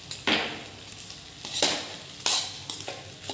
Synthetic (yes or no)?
no